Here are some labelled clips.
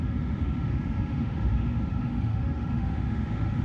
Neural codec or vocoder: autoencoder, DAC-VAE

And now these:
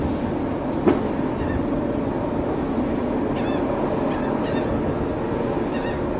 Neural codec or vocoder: none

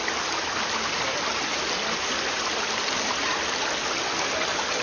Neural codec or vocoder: none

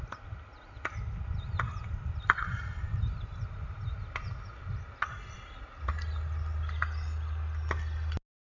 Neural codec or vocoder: none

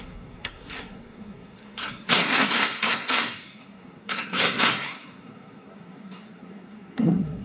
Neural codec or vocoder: codec, SNAC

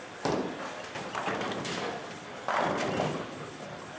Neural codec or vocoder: none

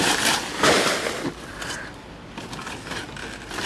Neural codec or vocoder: vocoder, BigVGAN v2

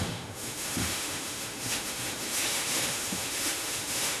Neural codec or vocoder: autoencoder, DAC-VAE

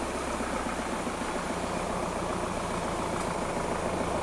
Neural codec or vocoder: none